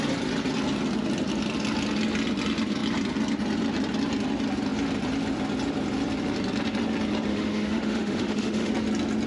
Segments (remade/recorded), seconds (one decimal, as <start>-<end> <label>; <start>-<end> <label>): 0.0-7.3 recorded; 7.3-8.7 remade; 8.7-9.3 recorded

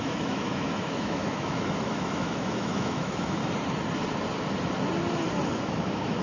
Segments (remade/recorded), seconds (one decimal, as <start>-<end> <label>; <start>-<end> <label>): 0.0-3.4 remade; 3.4-5.6 recorded; 5.6-6.2 remade

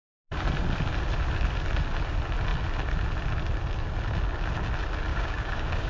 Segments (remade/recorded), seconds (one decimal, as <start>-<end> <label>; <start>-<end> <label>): 0.0-5.1 recorded; 5.1-5.9 remade

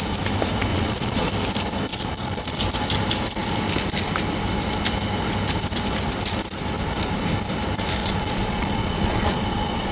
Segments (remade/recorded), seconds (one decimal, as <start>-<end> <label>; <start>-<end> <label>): 0.0-0.7 recorded; 0.7-1.3 remade; 1.3-1.9 recorded; 1.9-2.6 remade; 2.6-8.0 recorded; 8.0-9.9 remade